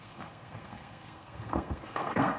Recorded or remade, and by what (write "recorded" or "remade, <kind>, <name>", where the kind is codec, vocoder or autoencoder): remade, codec, SNAC